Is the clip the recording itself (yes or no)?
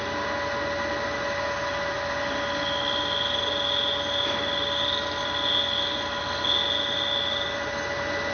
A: yes